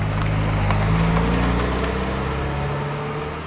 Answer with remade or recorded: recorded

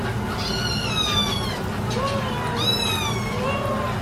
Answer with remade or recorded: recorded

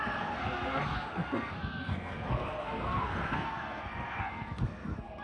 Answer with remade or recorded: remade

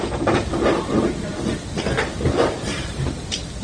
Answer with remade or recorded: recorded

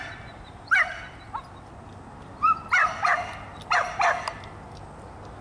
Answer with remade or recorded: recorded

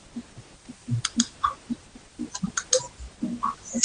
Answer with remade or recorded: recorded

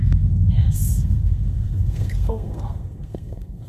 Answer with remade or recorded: remade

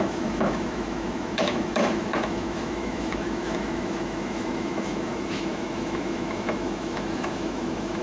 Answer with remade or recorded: remade